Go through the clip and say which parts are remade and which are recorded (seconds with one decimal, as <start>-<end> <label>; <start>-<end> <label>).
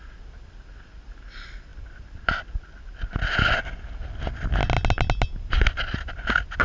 0.0-6.6 recorded